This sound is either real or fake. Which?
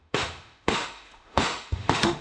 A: fake